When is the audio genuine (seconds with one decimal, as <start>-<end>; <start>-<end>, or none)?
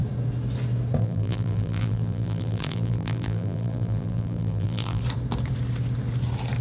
0.0-1.0; 5.0-6.6